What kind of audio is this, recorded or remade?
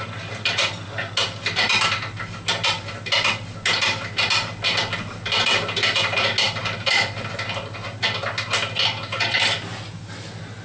recorded